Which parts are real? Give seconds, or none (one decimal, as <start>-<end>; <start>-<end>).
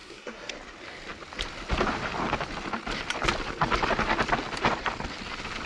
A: 0.5-5.7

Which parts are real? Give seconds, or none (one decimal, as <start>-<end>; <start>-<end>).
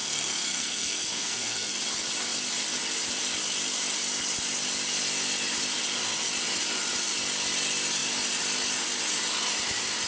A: 1.8-10.1